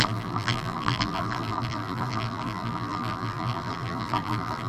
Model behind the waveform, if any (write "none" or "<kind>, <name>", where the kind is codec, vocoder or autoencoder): vocoder, BigVGAN v2